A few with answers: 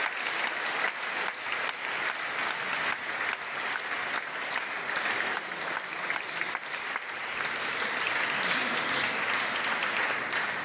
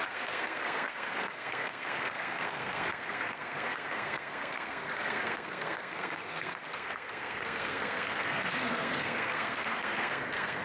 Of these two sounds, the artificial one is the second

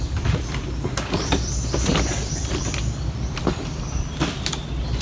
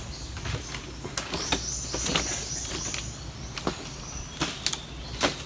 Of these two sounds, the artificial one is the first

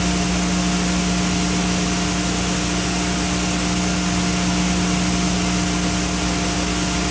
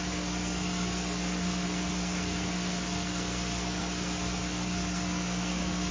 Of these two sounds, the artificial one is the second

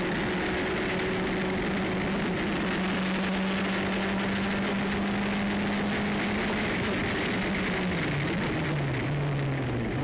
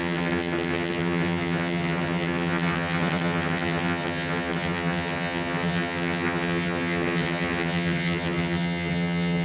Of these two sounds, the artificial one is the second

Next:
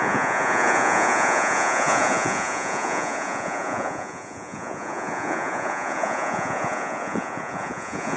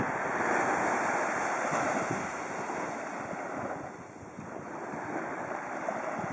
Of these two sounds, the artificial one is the first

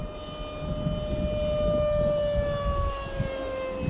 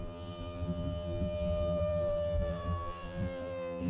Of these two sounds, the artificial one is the second